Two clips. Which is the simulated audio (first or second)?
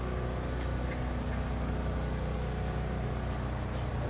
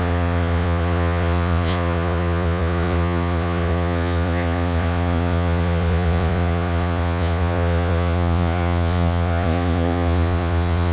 second